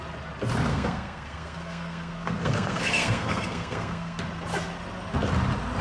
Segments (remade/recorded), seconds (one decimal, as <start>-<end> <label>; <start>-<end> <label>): 0.0-0.7 recorded; 0.7-4.2 remade; 4.2-5.8 recorded